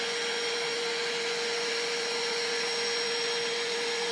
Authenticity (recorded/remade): remade